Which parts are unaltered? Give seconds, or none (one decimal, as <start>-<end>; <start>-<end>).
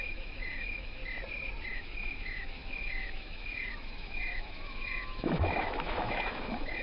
1.0-1.7